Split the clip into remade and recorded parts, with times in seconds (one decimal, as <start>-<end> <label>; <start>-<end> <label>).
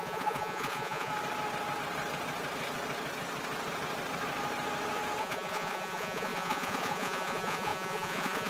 0.0-1.1 remade; 1.1-5.2 recorded; 5.2-8.5 remade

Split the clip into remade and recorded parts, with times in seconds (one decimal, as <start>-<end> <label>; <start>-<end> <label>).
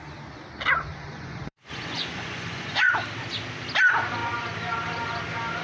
0.0-0.9 recorded; 0.9-2.9 remade; 2.9-5.6 recorded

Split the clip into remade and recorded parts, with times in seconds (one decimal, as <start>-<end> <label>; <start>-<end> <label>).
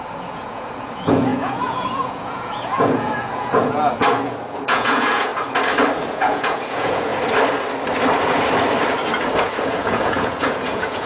0.0-5.3 remade; 5.3-6.1 recorded; 6.1-7.1 remade; 7.1-9.4 recorded; 9.4-11.1 remade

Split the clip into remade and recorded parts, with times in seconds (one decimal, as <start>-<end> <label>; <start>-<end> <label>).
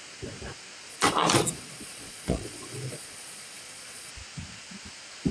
0.0-0.9 recorded; 0.9-4.1 remade; 4.1-5.3 recorded